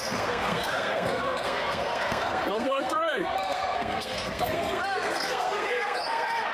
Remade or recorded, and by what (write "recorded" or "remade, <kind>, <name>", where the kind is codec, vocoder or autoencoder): remade, codec, SNAC